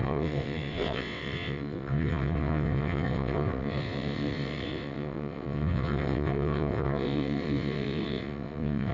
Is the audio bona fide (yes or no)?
no